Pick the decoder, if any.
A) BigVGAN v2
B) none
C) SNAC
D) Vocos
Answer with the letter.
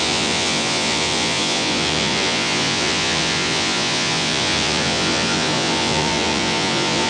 D